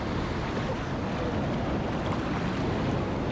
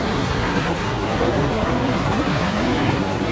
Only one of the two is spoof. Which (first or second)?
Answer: second